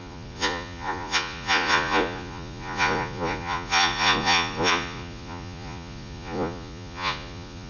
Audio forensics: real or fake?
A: fake